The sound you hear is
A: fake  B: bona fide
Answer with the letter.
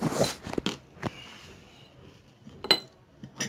B